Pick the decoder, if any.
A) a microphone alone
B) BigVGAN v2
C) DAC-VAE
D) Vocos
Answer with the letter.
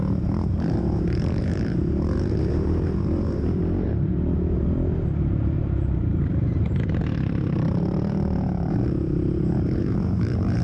B